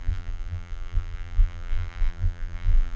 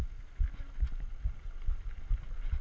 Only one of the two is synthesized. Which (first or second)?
first